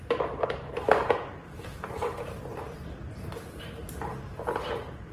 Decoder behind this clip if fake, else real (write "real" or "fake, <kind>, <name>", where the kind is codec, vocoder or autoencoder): fake, vocoder, BigVGAN v2